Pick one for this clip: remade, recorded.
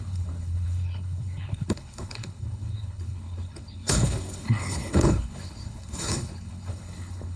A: remade